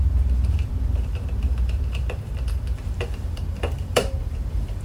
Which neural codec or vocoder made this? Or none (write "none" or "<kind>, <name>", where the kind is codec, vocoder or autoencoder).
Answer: vocoder, BigVGAN v2